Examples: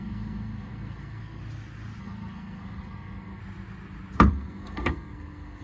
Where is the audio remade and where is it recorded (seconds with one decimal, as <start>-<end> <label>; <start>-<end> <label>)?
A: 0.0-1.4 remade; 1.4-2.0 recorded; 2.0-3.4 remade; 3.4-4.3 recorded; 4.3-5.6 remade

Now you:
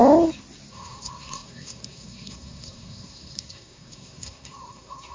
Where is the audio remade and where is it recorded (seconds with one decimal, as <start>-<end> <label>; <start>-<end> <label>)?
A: 0.0-0.7 recorded; 0.7-5.1 remade

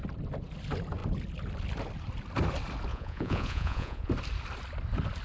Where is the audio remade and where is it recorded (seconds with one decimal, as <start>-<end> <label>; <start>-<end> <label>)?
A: 0.0-2.9 recorded; 2.9-4.1 remade; 4.1-5.2 recorded

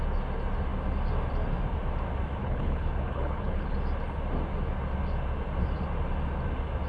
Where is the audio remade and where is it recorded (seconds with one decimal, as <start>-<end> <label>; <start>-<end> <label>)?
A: 0.0-2.4 recorded; 2.4-3.7 remade; 3.7-6.9 recorded